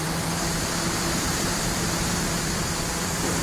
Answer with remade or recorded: remade